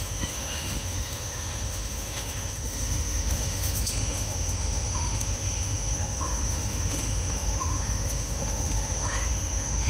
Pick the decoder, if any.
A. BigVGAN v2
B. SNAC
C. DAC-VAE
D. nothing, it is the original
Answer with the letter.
C